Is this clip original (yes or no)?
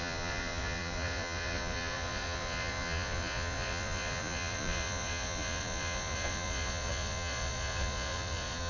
no